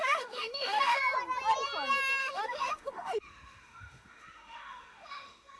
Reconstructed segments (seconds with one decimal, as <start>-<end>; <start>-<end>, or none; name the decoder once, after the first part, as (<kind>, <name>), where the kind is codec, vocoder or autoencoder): 0.0-1.0 (autoencoder, DAC-VAE); 2.2-5.6